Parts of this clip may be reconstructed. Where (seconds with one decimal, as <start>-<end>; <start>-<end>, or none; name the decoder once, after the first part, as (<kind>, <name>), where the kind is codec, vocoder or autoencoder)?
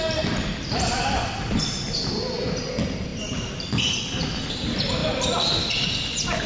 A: none